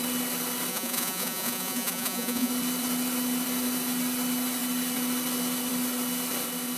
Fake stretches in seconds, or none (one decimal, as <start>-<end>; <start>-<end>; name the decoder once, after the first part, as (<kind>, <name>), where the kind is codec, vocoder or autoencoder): 0.7-2.5 (vocoder, Vocos)